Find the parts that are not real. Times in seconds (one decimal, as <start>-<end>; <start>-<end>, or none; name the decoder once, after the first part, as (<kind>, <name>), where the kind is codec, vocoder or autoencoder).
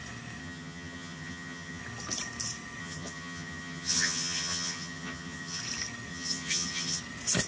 0.4-1.8 (vocoder, HiFi-GAN); 2.8-5.6; 6.1-7.0